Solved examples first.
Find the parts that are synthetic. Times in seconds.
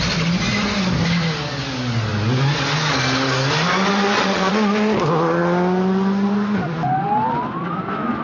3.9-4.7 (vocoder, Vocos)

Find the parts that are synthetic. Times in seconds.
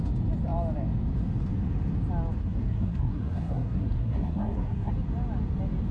2.4-4.9 (codec, SNAC)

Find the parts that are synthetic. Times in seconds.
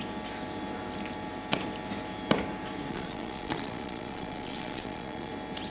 2.9-5.3 (vocoder, Vocos)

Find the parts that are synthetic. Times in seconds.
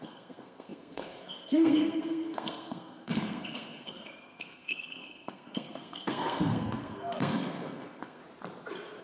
0.0-8.2 (codec, SNAC)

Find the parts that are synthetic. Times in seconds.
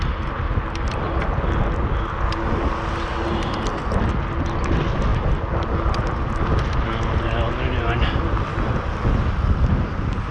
none